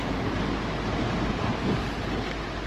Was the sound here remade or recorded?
recorded